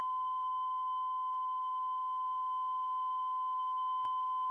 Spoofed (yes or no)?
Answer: yes